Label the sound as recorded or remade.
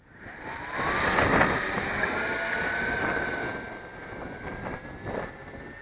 recorded